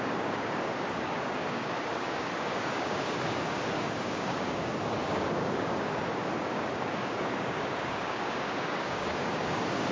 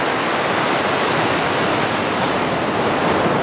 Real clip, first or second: second